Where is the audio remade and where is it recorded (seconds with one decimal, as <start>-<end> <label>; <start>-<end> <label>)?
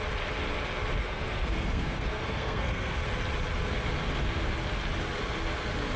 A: 0.0-1.0 recorded; 1.0-2.9 remade; 2.9-6.0 recorded